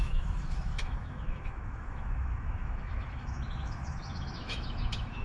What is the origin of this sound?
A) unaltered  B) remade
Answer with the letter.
B